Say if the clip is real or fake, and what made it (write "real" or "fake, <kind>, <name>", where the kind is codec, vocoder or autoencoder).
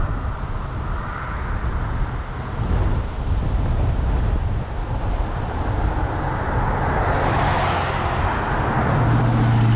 real